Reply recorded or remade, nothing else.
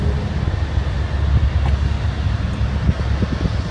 recorded